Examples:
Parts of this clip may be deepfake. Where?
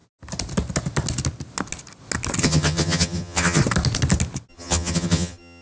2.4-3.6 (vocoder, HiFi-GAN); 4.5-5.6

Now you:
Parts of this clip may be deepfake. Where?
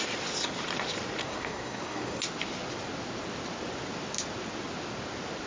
1.2-2.2 (codec, SNAC)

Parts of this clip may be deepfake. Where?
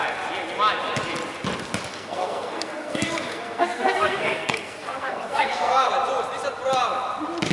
1.9-5.9 (codec, SNAC)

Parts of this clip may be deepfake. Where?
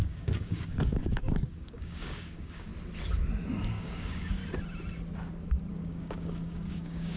0.0-2.7 (codec, DAC); 3.7-4.4; 5.7-7.2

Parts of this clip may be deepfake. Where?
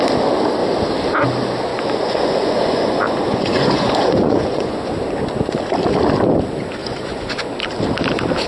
1.7-4.9 (vocoder, Vocos); 6.8-7.5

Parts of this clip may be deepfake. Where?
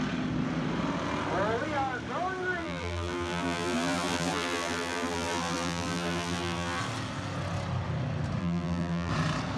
2.6-6.8 (vocoder, BigVGAN v2); 8.4-9.1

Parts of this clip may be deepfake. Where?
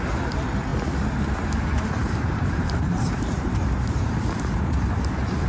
2.0-5.5 (vocoder, BigVGAN v2)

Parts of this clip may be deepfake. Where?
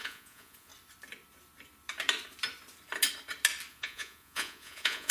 0.0-0.7 (vocoder, Vocos); 3.7-5.1